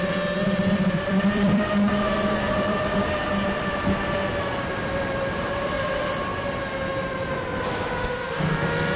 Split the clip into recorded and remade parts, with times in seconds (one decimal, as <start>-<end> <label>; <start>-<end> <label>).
0.0-6.3 remade; 6.3-7.1 recorded; 7.1-9.0 remade